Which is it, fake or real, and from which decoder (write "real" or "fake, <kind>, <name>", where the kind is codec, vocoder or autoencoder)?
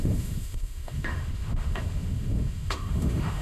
fake, autoencoder, DAC-VAE